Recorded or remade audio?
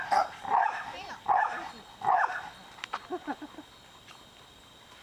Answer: recorded